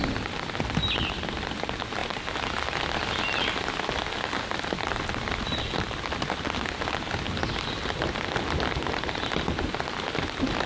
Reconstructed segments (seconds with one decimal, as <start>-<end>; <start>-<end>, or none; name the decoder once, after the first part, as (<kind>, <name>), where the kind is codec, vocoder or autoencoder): none